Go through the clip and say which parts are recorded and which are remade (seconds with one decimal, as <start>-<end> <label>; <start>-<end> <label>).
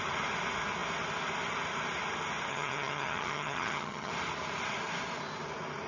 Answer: 0.0-2.5 recorded; 2.5-4.1 remade; 4.1-5.9 recorded